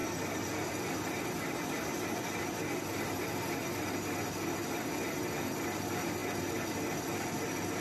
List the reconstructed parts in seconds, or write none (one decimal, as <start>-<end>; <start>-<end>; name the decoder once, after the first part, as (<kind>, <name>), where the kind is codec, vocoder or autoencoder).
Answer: none